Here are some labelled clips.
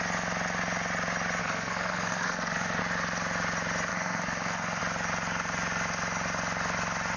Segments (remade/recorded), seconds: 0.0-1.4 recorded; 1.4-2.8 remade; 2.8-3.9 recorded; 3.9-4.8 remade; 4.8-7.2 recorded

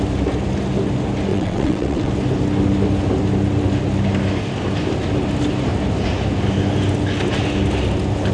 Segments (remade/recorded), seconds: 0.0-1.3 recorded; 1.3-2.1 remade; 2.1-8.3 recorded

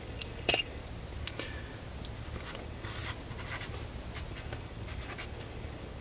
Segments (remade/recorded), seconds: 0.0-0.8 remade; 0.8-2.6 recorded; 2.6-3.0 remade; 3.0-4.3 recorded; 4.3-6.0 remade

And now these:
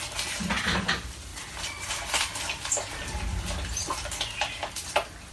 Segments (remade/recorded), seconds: 0.0-5.3 recorded